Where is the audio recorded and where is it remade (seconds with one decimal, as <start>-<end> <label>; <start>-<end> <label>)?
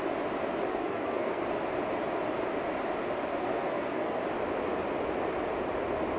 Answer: 0.0-0.7 recorded; 0.7-1.4 remade; 1.4-3.3 recorded; 3.3-4.2 remade; 4.2-6.2 recorded